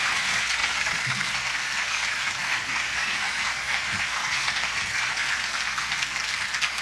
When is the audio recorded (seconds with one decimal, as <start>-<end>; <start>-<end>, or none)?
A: none